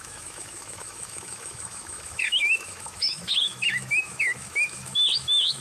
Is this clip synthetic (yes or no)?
yes